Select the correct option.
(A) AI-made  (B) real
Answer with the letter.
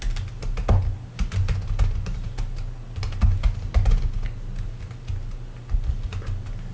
B